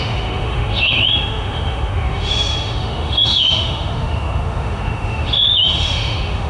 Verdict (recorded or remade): remade